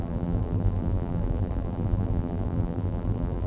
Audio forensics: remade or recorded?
remade